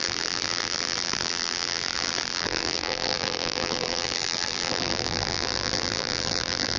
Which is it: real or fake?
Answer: fake